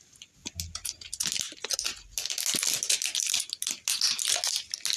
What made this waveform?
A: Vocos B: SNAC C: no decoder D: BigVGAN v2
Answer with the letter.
C